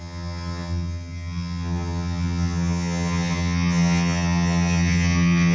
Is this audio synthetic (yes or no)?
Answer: yes